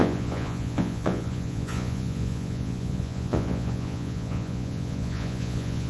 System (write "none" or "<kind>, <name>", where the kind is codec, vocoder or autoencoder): vocoder, Vocos